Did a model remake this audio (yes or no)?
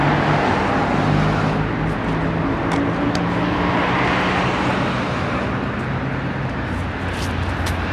no